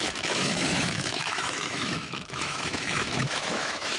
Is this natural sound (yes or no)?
no